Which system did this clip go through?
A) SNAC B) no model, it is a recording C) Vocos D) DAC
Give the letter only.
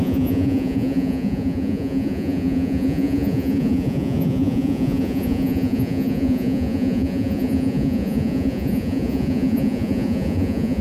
C